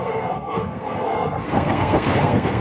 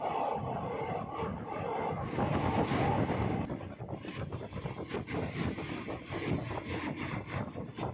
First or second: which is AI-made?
first